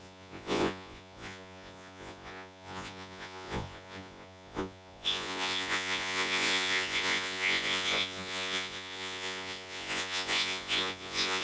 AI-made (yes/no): yes